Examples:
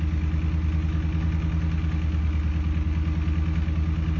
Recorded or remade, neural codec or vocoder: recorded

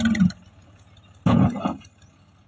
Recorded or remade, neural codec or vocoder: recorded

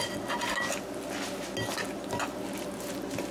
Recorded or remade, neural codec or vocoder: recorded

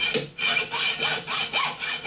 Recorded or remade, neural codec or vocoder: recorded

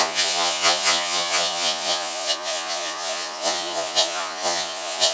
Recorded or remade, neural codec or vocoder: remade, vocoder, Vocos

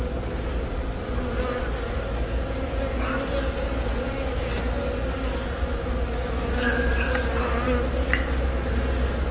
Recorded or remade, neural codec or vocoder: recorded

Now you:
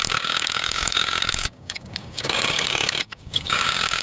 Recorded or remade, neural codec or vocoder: remade, codec, DAC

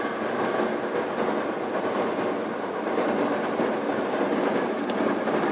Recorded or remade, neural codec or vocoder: recorded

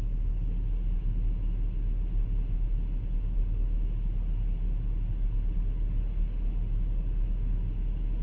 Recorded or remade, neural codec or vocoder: recorded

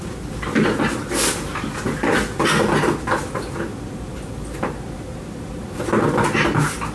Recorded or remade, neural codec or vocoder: recorded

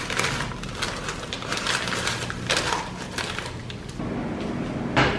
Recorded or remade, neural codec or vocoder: recorded